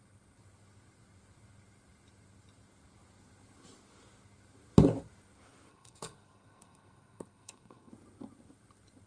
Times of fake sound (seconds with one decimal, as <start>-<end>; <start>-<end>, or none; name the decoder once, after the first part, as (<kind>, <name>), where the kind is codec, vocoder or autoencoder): 5.7-7.9 (codec, SNAC)